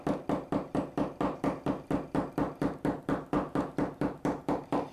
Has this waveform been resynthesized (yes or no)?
no